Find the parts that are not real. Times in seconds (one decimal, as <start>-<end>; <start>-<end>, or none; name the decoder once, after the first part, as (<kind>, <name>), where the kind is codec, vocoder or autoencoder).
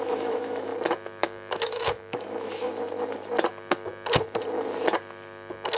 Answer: 0.0-0.7 (autoencoder, DAC-VAE); 1.2-2.7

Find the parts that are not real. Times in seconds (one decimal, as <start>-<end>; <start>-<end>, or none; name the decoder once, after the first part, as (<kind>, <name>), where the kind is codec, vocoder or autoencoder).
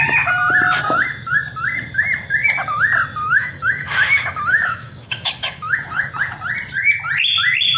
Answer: 3.2-6.1 (autoencoder, DAC-VAE)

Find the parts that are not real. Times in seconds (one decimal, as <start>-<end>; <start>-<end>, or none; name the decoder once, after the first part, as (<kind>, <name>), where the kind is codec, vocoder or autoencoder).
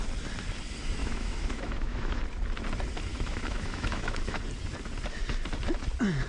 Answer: 1.0-2.2 (autoencoder, DAC-VAE); 3.1-4.4